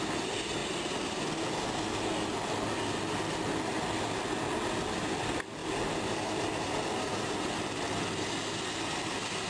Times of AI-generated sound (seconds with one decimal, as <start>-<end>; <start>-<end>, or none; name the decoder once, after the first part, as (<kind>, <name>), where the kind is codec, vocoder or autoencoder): none